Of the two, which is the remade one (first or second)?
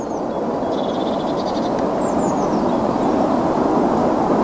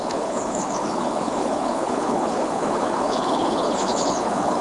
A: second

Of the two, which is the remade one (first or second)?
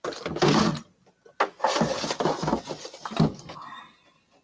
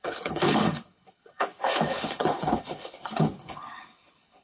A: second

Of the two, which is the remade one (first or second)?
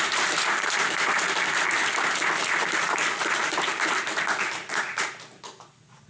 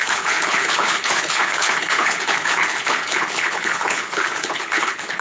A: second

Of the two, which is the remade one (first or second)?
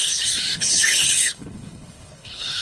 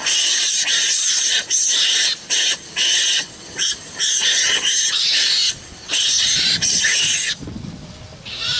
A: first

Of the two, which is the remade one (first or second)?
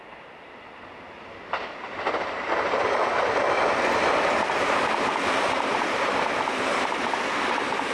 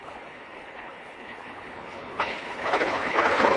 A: second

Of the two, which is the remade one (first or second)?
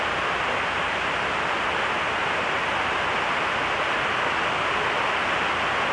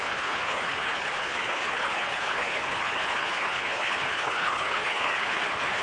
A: second